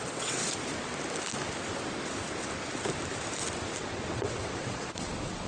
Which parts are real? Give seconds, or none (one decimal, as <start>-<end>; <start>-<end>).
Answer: 0.4-3.7